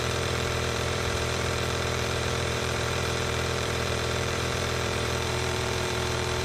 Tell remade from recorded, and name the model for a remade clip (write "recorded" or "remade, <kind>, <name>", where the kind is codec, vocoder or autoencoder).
remade, vocoder, BigVGAN v2